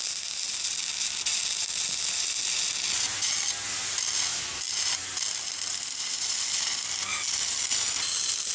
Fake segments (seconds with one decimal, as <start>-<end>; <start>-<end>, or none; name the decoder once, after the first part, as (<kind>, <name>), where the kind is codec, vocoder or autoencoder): none